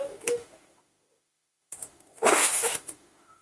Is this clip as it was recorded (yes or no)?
no